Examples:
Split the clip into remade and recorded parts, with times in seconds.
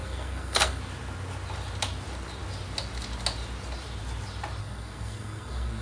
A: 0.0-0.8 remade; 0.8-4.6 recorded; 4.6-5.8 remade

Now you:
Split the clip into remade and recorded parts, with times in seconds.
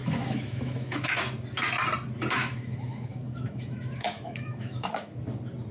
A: 0.0-1.2 remade; 1.2-2.4 recorded; 2.4-5.1 remade; 5.1-5.7 recorded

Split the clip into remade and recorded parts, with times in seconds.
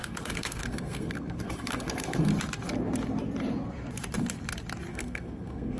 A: 0.0-2.3 remade; 2.3-4.9 recorded; 4.9-5.8 remade